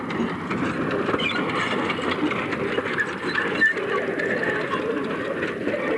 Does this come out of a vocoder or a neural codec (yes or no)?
no